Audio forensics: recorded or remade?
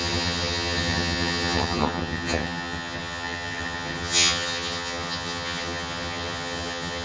remade